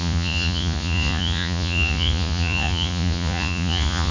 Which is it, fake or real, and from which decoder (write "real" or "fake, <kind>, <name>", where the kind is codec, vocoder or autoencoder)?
fake, vocoder, Vocos